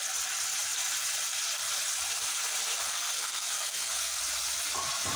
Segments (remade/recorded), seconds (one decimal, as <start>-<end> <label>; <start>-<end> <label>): 0.0-2.9 recorded; 2.9-4.2 remade; 4.2-5.2 recorded